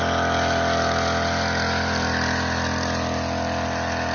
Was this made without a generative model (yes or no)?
yes